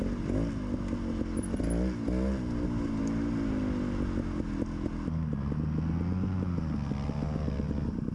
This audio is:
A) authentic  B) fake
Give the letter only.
A